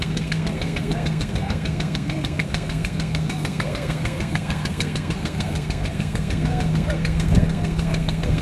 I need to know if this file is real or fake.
fake